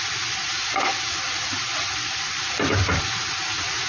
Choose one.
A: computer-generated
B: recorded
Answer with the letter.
B